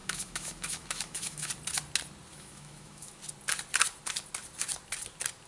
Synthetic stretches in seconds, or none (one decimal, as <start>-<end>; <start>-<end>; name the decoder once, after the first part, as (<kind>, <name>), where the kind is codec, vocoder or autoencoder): 0.0-1.5 (autoencoder, DAC-VAE); 2.3-3.2